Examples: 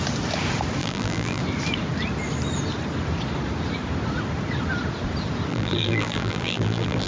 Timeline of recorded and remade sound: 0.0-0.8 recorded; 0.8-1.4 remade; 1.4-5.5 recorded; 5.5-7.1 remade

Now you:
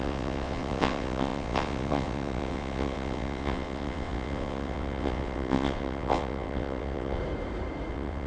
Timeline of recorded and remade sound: 0.0-7.2 remade; 7.2-7.9 recorded; 7.9-8.3 remade

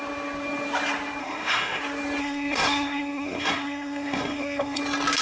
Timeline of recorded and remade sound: 0.0-1.2 recorded; 1.2-1.8 remade; 1.8-2.2 recorded; 2.2-4.8 remade; 4.8-5.2 recorded

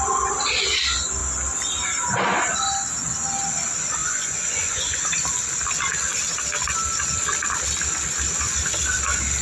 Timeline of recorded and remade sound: 0.0-4.0 recorded; 4.0-5.0 remade; 5.0-9.4 recorded

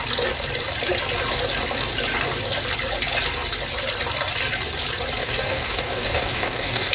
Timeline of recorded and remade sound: 0.0-5.2 recorded; 5.2-6.9 remade

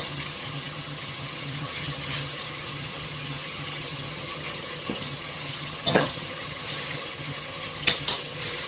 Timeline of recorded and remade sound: 0.0-8.7 remade

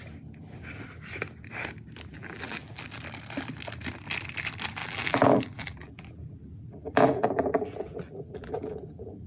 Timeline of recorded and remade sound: 0.0-2.1 recorded; 2.1-2.8 remade; 2.8-4.8 recorded; 4.8-9.3 remade